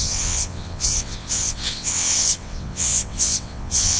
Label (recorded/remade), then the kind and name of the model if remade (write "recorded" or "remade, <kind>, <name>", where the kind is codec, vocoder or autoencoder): remade, vocoder, WaveNeXt